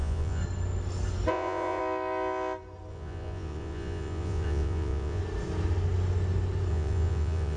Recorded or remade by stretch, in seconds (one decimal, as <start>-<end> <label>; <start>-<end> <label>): 0.0-0.4 remade; 0.4-1.3 recorded; 1.3-1.8 remade; 1.8-2.9 recorded; 2.9-5.2 remade; 5.2-6.7 recorded; 6.7-7.6 remade